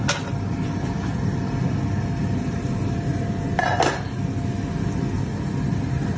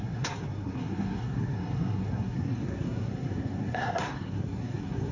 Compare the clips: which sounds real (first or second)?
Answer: first